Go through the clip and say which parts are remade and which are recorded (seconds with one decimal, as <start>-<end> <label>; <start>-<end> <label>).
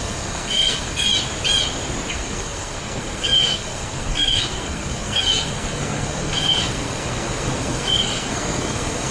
0.0-1.1 remade; 1.1-2.1 recorded; 2.1-9.1 remade